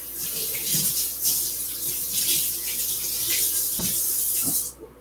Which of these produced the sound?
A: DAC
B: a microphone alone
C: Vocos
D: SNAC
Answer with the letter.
B